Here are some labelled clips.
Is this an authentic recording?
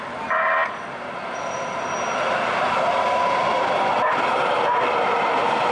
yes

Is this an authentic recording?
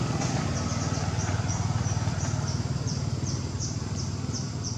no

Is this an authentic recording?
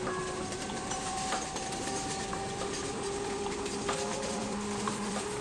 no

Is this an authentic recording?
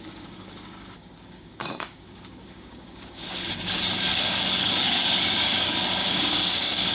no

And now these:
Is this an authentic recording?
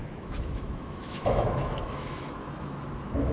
no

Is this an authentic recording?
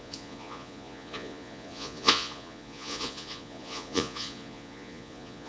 no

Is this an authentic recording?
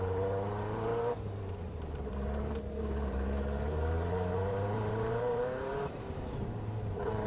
no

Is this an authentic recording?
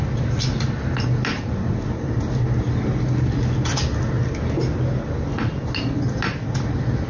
yes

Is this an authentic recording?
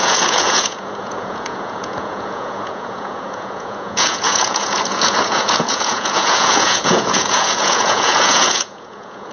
no